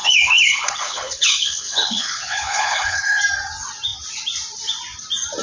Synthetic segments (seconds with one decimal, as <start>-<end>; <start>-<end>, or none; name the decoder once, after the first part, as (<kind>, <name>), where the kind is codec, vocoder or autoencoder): 0.0-3.2 (codec, HILCodec)